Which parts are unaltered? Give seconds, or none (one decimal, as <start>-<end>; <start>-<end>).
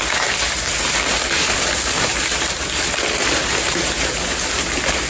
0.0-5.1